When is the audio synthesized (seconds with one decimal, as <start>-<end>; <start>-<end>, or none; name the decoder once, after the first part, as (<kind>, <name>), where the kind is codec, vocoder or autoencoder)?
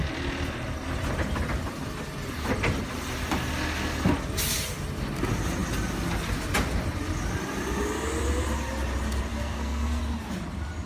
9.3-10.0 (codec, SNAC)